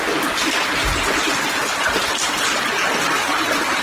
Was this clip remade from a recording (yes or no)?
no